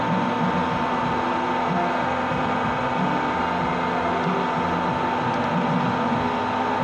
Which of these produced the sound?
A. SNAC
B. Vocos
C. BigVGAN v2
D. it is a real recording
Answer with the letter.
D